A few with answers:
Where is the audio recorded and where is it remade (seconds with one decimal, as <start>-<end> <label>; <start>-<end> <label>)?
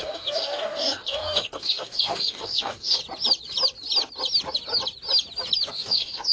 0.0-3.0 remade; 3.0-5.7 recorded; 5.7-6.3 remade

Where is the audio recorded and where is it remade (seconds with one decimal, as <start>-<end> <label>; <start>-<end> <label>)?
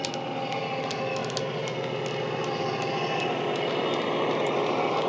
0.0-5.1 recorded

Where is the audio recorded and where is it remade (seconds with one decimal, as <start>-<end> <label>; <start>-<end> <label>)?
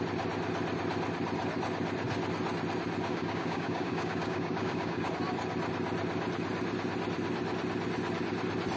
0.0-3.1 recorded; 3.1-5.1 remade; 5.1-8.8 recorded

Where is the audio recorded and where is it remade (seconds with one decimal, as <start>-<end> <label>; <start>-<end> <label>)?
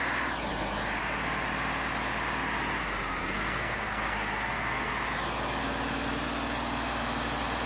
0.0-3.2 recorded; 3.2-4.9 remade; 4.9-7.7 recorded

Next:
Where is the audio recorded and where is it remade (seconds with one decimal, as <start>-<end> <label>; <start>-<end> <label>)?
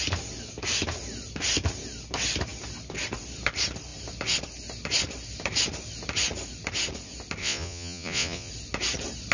0.0-7.4 recorded; 7.4-8.5 remade; 8.5-9.3 recorded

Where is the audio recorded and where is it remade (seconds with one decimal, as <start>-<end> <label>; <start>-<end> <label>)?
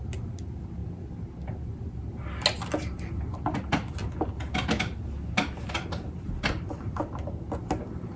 0.0-8.2 recorded